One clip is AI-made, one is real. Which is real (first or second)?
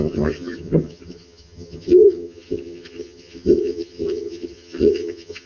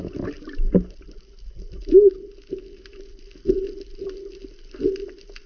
second